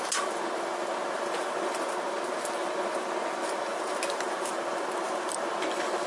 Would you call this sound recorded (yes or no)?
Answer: yes